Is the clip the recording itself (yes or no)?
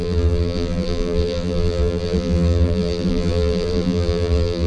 no